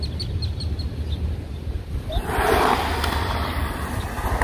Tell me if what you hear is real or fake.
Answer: real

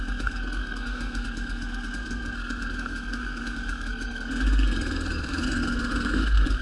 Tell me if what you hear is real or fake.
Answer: fake